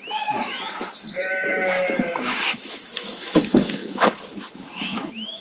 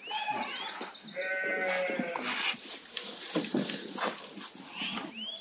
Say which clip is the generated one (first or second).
first